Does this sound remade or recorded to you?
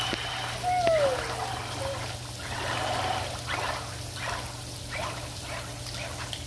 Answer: recorded